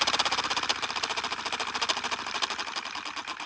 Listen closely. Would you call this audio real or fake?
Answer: real